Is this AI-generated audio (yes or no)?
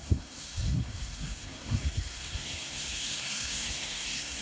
yes